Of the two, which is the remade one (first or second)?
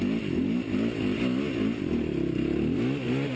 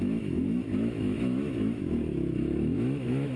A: second